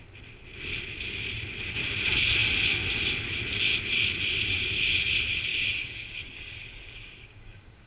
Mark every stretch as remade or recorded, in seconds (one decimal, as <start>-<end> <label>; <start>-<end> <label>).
0.0-5.5 recorded; 5.5-7.9 remade